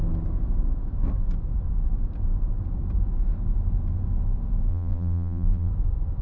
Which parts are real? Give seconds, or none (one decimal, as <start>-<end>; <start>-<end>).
0.0-4.7; 5.7-6.2